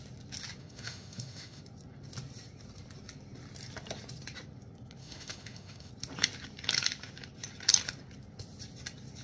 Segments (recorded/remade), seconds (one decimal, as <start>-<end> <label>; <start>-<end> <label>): 0.0-0.6 recorded; 0.6-1.6 remade; 1.6-5.0 recorded; 5.0-5.9 remade; 5.9-9.2 recorded